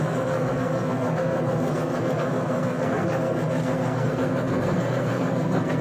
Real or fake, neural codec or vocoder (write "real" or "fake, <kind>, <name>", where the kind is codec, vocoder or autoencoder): fake, codec, SNAC